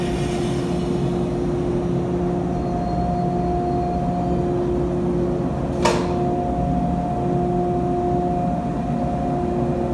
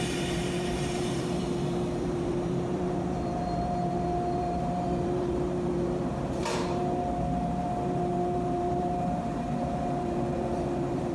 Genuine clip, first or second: first